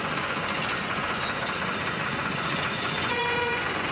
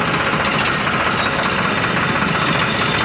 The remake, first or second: first